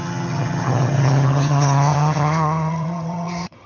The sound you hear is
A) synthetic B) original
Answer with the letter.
A